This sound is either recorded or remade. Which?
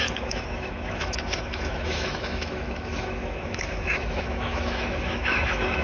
remade